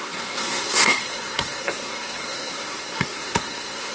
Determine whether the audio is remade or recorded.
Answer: remade